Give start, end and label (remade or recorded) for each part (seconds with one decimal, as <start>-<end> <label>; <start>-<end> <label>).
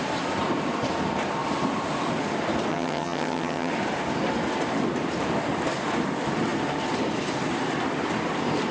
0.0-2.7 recorded; 2.7-3.7 remade; 3.7-8.7 recorded